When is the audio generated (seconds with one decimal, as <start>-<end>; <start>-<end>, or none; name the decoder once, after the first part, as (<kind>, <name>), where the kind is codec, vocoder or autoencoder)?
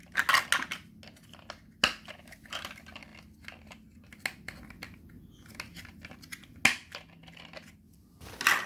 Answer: none